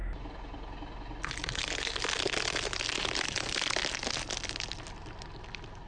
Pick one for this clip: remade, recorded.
recorded